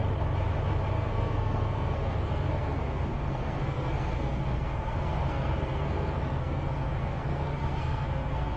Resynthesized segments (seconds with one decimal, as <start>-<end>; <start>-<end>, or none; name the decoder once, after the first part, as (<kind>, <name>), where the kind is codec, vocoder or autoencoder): 0.9-8.6 (codec, SNAC)